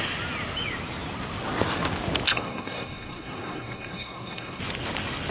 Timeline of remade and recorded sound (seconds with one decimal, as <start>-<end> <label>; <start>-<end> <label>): 0.0-2.3 recorded; 2.3-4.6 remade; 4.6-5.3 recorded